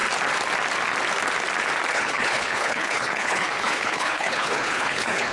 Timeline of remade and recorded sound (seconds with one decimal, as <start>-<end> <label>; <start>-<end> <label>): 0.0-1.9 recorded; 1.9-5.3 remade